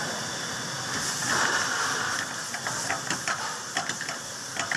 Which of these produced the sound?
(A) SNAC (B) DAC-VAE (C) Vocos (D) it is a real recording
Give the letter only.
D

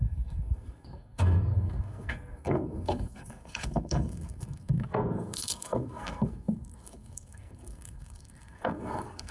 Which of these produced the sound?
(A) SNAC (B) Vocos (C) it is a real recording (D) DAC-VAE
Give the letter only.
A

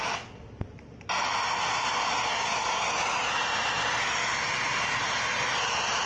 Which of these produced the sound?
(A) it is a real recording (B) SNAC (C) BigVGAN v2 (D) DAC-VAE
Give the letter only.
A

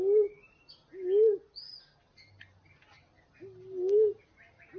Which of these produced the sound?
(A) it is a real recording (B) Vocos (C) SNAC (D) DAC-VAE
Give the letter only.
A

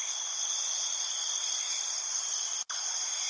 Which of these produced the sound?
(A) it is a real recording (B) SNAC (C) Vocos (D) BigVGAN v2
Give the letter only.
A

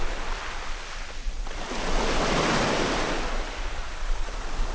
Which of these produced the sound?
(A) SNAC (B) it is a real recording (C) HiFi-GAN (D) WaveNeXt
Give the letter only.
B